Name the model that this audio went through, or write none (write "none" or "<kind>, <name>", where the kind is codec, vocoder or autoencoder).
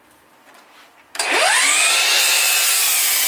none